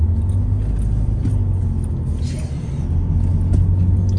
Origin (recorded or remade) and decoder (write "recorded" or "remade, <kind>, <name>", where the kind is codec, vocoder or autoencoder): recorded